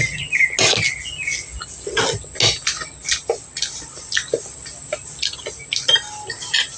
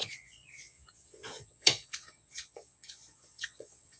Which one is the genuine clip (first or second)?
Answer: first